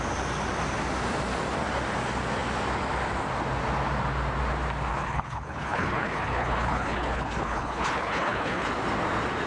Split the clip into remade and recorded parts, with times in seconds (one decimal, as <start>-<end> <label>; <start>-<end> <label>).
0.0-4.9 recorded; 4.9-8.7 remade; 8.7-9.5 recorded